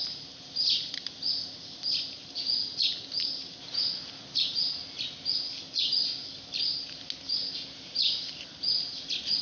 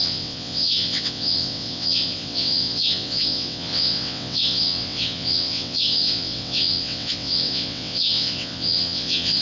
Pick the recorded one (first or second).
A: first